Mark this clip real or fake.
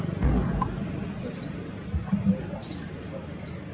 real